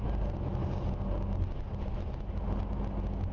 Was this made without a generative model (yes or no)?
yes